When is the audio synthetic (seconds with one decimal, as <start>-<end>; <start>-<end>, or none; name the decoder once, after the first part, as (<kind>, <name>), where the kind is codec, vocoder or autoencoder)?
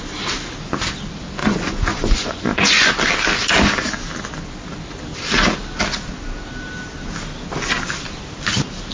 1.4-2.9 (vocoder, Vocos)